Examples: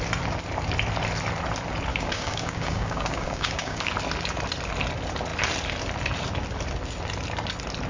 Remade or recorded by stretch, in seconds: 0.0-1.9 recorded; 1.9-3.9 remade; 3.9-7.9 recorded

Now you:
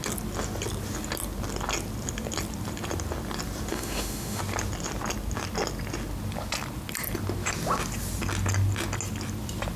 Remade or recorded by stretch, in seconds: 0.0-3.7 recorded; 3.7-4.4 remade; 4.4-9.8 recorded

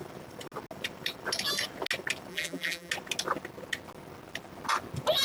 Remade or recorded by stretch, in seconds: 0.0-2.3 recorded; 2.3-2.9 remade; 2.9-5.2 recorded

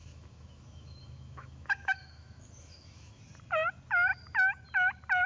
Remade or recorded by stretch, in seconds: 0.0-3.2 remade; 3.2-5.3 recorded

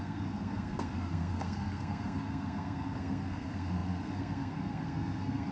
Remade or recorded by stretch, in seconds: 0.0-5.5 remade